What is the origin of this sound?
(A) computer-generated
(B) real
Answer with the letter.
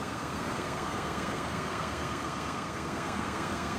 A